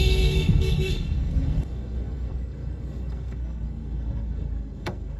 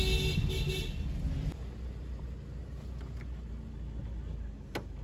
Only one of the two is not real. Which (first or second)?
first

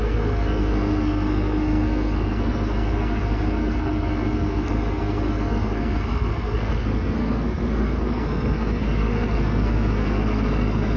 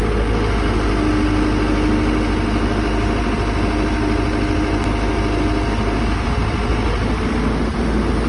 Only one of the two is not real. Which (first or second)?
first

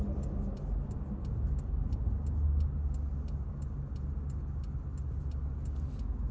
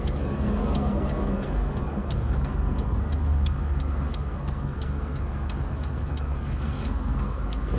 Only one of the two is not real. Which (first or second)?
second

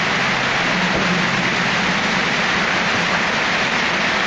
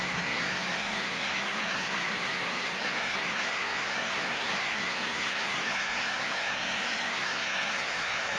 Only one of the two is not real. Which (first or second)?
second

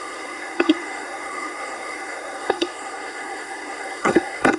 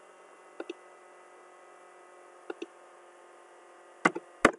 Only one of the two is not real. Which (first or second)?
first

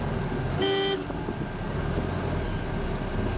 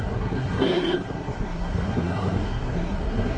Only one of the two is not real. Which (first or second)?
second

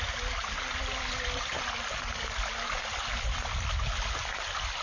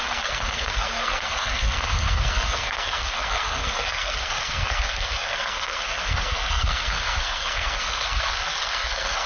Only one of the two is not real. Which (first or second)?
second